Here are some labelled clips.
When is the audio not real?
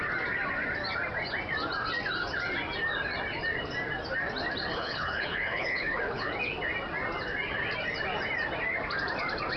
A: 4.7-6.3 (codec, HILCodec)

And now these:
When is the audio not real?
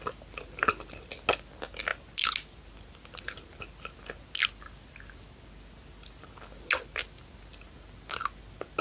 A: none